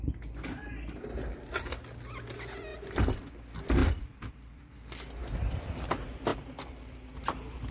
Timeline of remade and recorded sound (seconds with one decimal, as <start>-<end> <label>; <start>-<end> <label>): 0.0-2.7 recorded; 2.7-3.3 remade; 3.3-3.8 recorded; 3.8-4.7 remade; 4.7-6.3 recorded; 6.3-7.2 remade; 7.2-7.7 recorded